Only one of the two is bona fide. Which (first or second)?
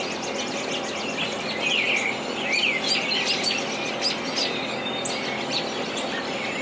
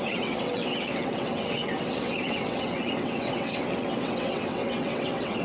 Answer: first